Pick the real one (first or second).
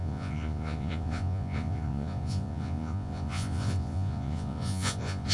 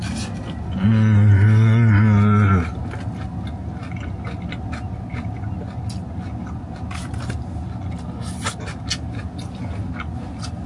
second